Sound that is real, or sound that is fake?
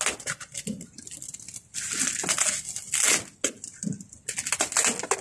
real